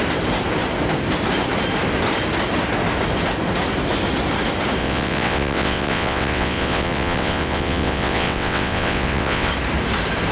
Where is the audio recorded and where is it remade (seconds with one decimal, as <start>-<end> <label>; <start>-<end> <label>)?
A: 0.0-4.8 recorded; 4.8-9.5 remade; 9.5-10.3 recorded

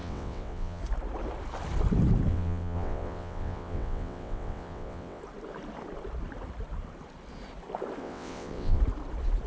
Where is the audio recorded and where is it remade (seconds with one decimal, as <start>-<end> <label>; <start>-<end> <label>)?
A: 0.0-0.8 remade; 0.8-2.3 recorded; 2.3-5.2 remade; 5.2-8.0 recorded; 8.0-8.8 remade; 8.8-9.5 recorded

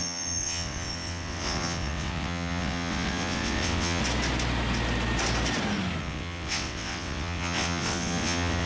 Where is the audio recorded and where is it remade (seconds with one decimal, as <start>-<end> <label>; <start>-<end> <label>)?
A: 0.0-4.0 remade; 4.0-6.0 recorded; 6.0-8.7 remade

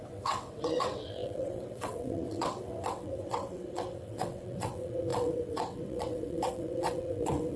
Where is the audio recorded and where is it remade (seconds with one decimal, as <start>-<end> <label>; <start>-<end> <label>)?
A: 0.0-7.6 remade

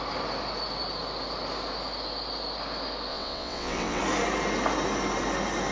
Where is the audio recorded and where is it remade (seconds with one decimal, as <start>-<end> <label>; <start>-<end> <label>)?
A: 0.0-3.1 recorded; 3.1-4.0 remade; 4.0-5.7 recorded